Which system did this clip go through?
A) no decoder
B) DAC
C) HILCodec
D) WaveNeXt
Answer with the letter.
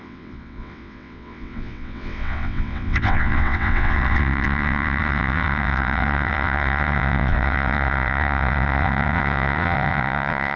D